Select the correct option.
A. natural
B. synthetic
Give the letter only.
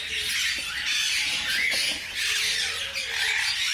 A